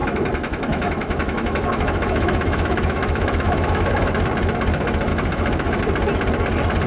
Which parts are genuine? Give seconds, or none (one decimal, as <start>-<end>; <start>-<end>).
4.1-5.1; 5.8-6.9